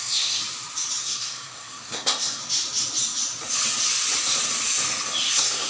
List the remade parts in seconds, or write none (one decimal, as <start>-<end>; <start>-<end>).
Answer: 0.0-0.4; 1.0-2.4; 5.3-5.7